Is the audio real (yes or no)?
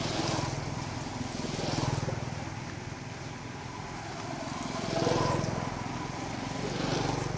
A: yes